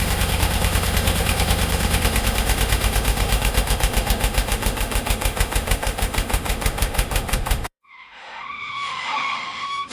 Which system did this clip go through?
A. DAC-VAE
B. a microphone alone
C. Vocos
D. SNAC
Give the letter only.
A